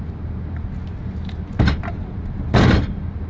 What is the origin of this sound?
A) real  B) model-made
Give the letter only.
A